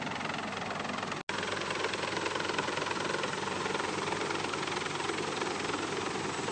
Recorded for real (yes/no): yes